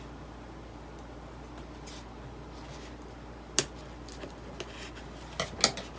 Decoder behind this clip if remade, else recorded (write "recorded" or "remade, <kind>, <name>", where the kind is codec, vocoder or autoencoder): recorded